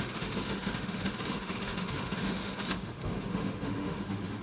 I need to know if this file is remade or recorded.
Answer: remade